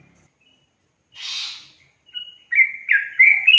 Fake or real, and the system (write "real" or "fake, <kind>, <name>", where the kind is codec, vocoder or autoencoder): real